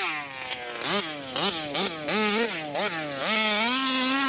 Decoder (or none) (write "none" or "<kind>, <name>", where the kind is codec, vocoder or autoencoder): none